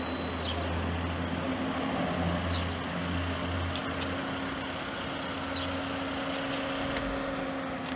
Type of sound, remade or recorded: recorded